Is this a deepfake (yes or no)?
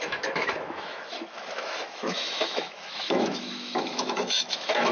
yes